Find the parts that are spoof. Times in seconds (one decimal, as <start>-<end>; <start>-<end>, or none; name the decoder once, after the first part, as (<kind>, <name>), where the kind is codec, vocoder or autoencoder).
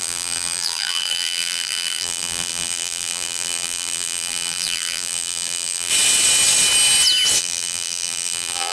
0.0-5.9 (vocoder, BigVGAN v2); 7.4-8.7